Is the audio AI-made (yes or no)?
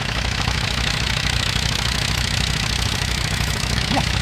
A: yes